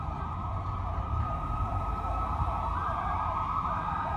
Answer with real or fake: fake